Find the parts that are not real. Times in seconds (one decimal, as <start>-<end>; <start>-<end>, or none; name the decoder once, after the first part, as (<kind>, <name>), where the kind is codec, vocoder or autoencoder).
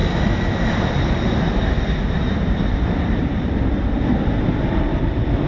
0.0-5.5 (vocoder, BigVGAN v2)